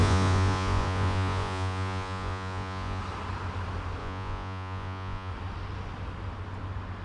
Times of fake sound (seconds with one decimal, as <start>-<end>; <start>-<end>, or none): 0.0-3.0; 4.0-5.3